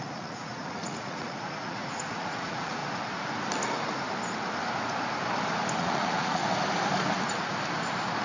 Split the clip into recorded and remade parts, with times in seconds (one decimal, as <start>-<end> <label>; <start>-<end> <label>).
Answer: 0.0-2.8 remade; 2.8-5.8 recorded; 5.8-6.4 remade; 6.4-8.2 recorded